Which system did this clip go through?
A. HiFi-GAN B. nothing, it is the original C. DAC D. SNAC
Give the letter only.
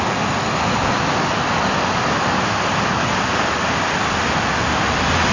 B